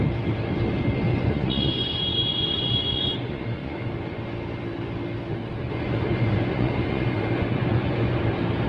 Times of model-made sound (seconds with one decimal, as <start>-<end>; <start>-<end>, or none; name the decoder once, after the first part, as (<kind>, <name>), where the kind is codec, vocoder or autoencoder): 1.1-3.9 (vocoder, Vocos); 5.4-8.2

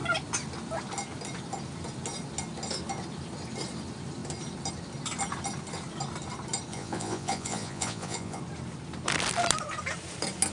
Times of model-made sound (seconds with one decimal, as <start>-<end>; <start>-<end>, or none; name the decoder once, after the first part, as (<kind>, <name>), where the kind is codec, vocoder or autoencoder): 6.7-8.4 (vocoder, Vocos)

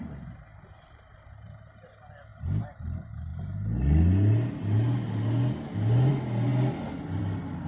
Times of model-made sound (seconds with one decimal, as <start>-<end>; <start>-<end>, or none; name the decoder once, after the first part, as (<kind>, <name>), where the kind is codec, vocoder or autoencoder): none

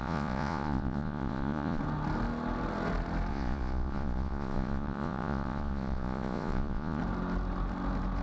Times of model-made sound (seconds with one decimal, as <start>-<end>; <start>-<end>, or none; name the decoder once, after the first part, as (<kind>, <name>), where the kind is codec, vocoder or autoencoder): 0.0-1.8 (vocoder, Vocos); 3.3-7.0

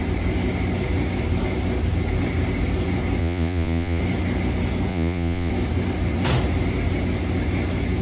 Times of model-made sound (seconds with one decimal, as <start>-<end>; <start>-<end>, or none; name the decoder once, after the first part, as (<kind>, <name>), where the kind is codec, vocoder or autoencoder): 3.2-4.0 (vocoder, Vocos); 4.9-5.5

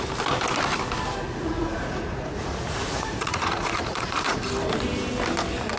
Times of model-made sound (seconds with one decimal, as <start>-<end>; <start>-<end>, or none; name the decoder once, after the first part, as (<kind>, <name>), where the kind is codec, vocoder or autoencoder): 1.3-4.4 (vocoder, Vocos)